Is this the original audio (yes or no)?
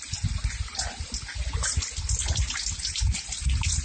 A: yes